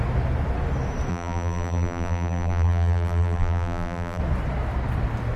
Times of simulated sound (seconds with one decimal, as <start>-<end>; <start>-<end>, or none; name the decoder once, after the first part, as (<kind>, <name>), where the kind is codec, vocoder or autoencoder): 1.1-4.2 (vocoder, BigVGAN v2)